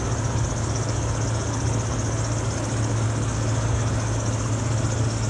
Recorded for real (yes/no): no